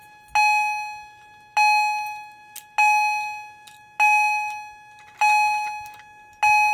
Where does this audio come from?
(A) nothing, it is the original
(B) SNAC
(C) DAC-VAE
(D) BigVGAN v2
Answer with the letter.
A